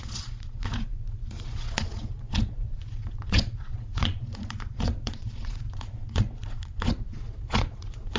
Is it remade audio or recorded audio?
remade